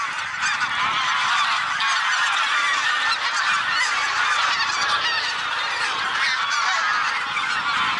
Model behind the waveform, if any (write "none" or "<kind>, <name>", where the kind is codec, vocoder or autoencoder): none